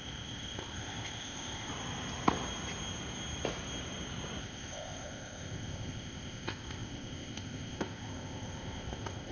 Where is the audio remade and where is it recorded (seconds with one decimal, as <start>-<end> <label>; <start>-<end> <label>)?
0.0-1.7 remade; 1.7-4.4 recorded; 4.4-9.3 remade